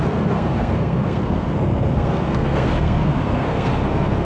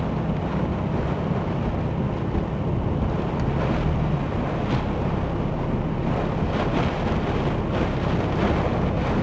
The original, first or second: second